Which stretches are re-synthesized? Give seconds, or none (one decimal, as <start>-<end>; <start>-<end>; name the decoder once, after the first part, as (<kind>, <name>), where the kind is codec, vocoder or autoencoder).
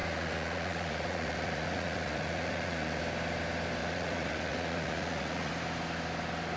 0.0-3.0 (vocoder, Vocos); 3.8-5.5